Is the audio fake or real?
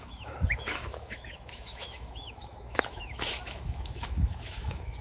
fake